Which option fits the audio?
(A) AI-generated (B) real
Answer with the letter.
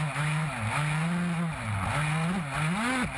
B